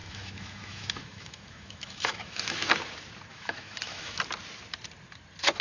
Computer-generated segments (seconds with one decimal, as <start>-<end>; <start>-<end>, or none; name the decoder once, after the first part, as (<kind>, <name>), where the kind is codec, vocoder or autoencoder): 0.0-2.7 (autoencoder, DAC-VAE); 3.3-4.2